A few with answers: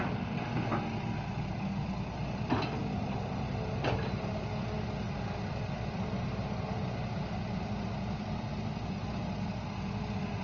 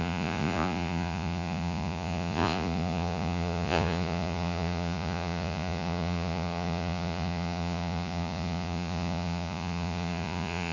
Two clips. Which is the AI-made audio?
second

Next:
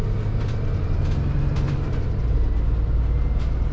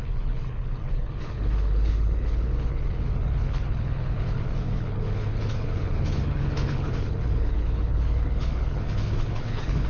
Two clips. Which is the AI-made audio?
second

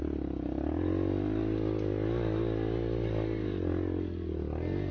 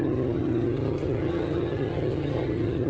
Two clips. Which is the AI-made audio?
second